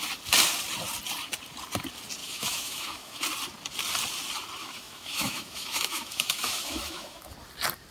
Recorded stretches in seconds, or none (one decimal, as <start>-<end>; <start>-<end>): 0.0-2.2; 3.2-4.6; 7.3-7.9